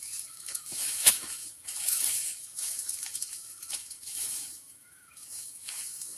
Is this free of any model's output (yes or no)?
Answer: no